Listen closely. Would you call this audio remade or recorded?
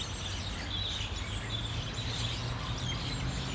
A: recorded